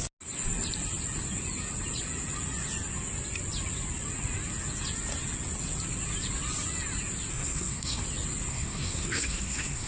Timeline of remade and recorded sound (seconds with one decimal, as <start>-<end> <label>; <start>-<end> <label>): 0.0-7.3 recorded; 7.3-8.0 remade; 8.0-8.5 recorded; 8.5-9.9 remade